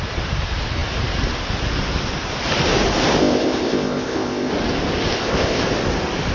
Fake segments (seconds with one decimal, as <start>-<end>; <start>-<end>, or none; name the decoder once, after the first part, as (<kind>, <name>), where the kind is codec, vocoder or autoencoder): 3.2-4.5 (codec, ZipCodec); 5.1-5.6